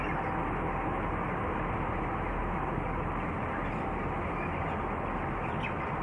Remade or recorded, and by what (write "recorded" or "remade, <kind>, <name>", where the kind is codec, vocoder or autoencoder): recorded